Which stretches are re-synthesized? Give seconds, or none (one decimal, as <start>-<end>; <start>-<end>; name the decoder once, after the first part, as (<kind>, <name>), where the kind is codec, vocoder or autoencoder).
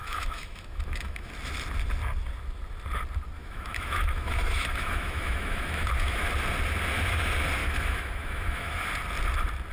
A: 0.0-1.3 (autoencoder, DAC-VAE); 3.4-6.3; 7.6-8.8